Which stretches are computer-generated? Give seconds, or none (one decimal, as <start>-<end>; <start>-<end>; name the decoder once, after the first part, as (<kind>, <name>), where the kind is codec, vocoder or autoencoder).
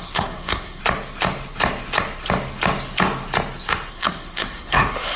0.0-0.8 (codec, SNAC); 3.9-5.2